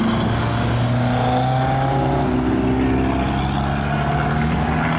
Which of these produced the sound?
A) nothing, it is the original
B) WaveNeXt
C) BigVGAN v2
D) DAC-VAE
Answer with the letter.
A